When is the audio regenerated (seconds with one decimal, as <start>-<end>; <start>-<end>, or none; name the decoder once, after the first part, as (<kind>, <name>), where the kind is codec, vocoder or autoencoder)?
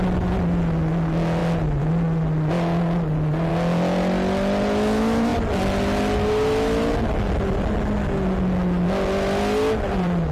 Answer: none